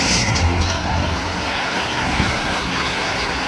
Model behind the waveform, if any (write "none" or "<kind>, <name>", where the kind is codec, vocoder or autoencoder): codec, SNAC